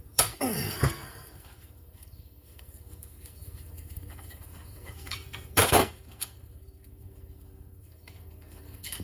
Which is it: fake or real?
fake